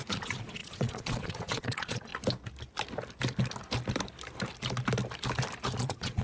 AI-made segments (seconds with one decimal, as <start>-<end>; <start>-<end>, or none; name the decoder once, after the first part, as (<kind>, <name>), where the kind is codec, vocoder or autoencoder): 0.0-2.1 (vocoder, Vocos); 5.8-6.2